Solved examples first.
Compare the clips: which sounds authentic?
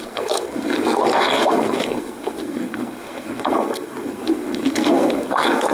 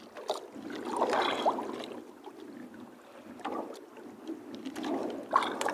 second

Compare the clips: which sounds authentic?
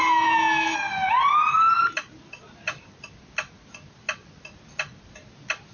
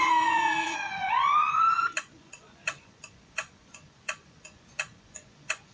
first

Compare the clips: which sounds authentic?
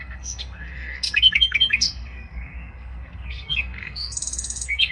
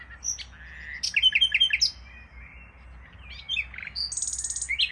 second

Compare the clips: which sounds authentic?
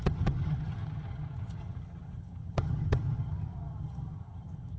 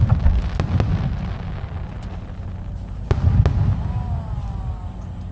second